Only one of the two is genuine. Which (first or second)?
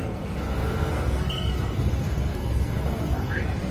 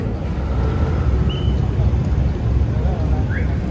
second